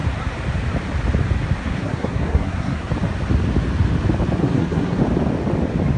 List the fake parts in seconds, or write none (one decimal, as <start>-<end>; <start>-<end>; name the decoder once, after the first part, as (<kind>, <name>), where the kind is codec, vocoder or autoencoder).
1.6-2.9 (codec, SNAC); 4.4-5.0